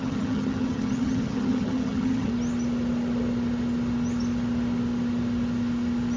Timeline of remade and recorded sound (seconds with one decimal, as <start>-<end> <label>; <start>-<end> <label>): 0.0-2.3 remade; 2.3-6.2 recorded